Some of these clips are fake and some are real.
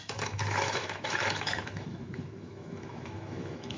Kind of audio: fake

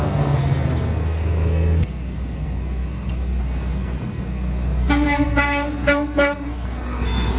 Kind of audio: fake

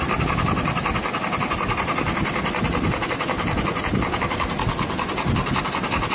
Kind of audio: real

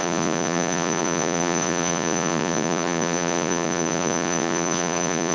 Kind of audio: fake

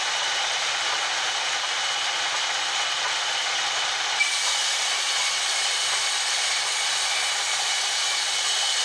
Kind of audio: real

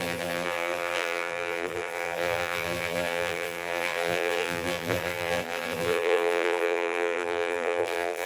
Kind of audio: fake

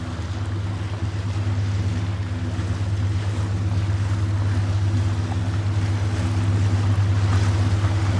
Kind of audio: real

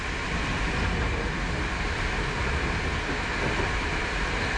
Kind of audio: real